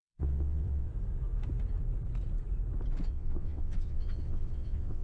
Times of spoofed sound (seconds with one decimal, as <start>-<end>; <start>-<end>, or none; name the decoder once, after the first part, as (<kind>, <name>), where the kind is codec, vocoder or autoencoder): 0.0-0.9 (vocoder, WaveNeXt); 3.1-5.0